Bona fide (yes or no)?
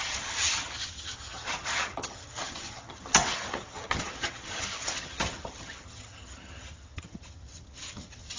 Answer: no